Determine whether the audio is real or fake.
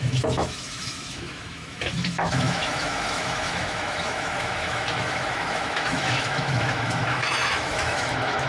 fake